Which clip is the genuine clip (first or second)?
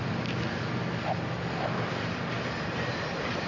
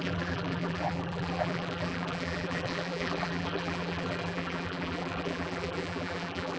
first